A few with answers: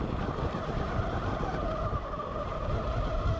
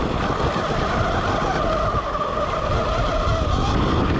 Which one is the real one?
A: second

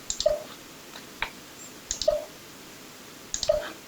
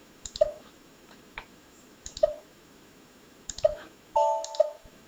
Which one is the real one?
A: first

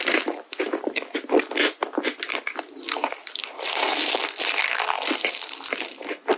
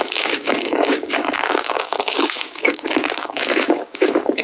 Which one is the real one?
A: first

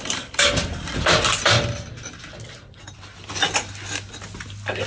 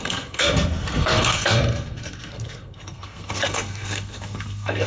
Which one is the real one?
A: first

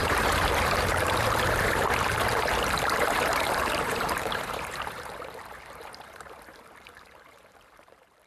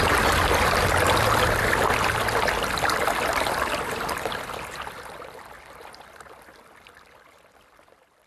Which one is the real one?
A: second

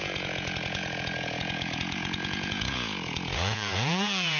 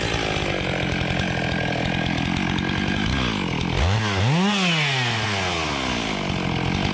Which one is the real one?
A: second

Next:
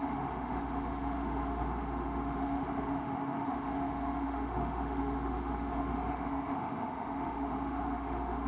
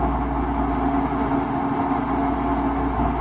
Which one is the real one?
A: second